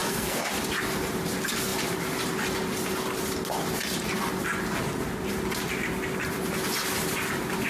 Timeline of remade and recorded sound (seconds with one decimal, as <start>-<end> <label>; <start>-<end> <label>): 0.0-0.5 remade; 0.5-7.7 recorded